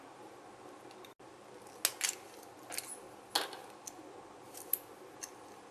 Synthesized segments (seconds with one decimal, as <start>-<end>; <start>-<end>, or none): none